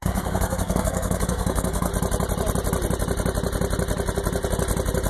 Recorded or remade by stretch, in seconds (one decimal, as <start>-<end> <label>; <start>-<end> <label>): 0.0-1.9 remade; 1.9-5.1 recorded